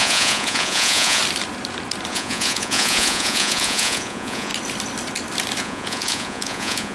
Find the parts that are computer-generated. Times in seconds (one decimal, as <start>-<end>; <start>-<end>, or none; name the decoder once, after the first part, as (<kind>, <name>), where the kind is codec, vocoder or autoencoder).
0.0-1.2 (vocoder, Vocos); 2.1-4.5; 5.6-6.9